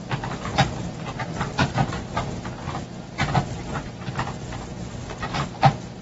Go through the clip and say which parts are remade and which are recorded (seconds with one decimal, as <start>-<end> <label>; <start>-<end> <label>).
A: 0.0-6.0 recorded